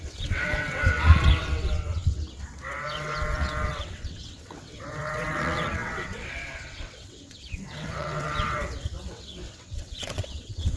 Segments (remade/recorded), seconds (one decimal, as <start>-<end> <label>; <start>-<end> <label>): 0.0-10.8 remade